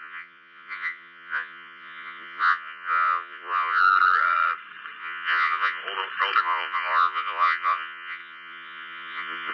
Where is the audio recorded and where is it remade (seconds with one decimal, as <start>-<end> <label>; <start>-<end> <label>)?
0.0-3.8 remade; 3.8-5.0 recorded; 5.0-5.8 remade; 5.8-6.4 recorded; 6.4-9.5 remade